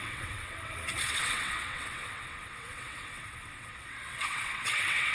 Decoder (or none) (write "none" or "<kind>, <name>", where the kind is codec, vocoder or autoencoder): vocoder, WaveNeXt